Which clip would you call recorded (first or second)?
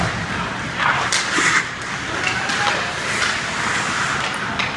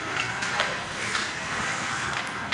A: first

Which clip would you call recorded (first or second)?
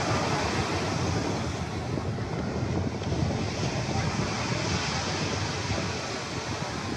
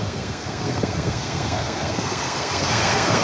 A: first